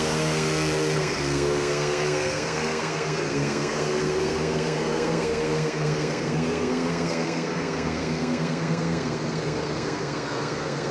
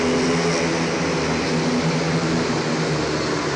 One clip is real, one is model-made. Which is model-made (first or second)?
first